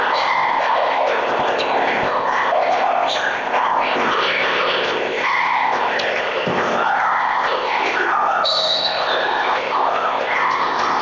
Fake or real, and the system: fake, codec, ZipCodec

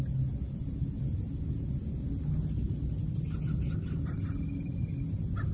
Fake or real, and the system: real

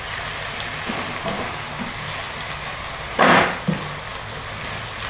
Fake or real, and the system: real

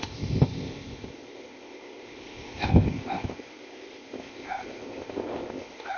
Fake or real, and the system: fake, codec, ZipCodec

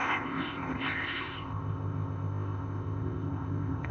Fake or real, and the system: fake, codec, ZipCodec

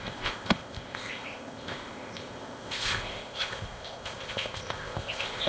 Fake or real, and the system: fake, codec, ZipCodec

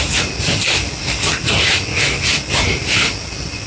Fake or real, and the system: real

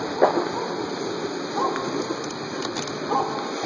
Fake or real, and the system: real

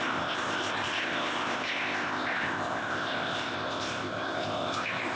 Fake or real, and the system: fake, codec, ZipCodec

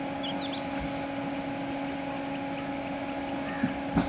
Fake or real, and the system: real